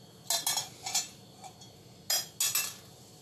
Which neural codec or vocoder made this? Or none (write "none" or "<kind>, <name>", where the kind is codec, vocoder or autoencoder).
none